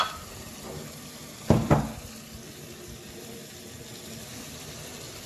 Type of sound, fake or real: real